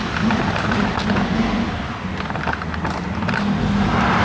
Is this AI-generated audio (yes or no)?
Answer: no